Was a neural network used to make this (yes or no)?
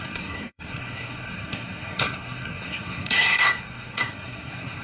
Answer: yes